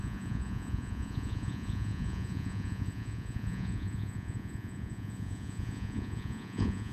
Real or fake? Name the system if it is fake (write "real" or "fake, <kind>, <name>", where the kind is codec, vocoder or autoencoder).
fake, vocoder, Vocos